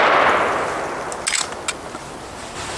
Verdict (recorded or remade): recorded